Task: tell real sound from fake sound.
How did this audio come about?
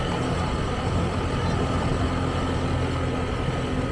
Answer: real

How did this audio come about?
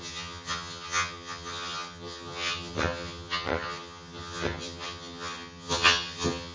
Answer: fake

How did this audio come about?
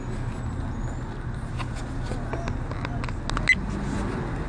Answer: real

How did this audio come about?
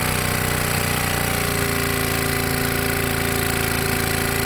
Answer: real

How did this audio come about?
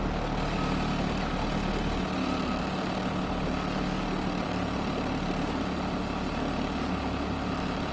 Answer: real